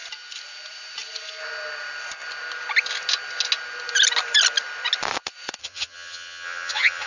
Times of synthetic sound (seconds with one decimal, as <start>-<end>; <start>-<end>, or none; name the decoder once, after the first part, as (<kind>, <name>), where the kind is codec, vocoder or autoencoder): 5.6-7.1 (vocoder, HiFi-GAN)